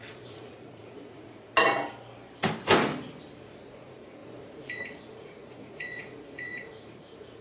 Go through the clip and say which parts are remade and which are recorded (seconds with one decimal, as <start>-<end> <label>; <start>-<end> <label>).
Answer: 0.0-1.5 remade; 1.5-3.4 recorded; 3.4-7.4 remade